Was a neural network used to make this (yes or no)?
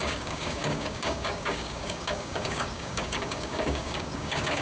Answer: yes